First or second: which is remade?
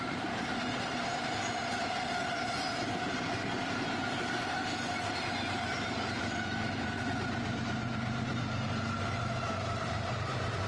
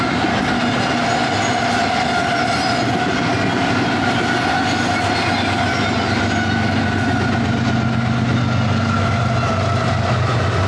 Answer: first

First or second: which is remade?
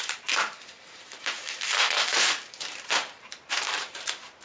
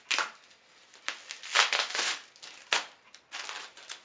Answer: first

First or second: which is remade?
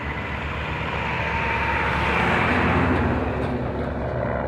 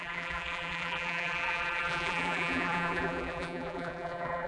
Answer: second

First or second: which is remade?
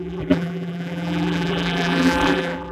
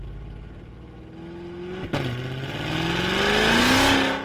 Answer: first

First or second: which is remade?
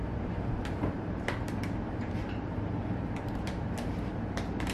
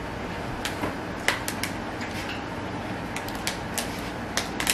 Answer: first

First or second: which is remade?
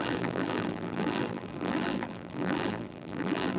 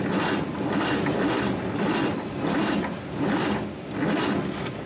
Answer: first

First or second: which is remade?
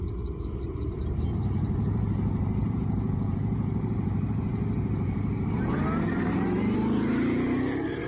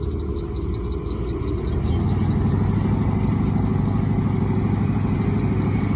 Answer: first